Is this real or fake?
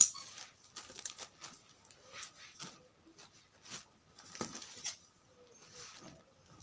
real